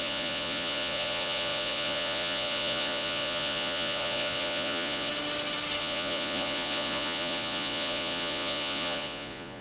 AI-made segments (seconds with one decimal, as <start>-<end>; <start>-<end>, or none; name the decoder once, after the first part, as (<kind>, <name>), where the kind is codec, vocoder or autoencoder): 0.0-5.1 (vocoder, Vocos); 5.8-9.6